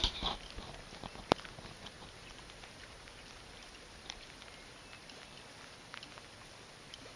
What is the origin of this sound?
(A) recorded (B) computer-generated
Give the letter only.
A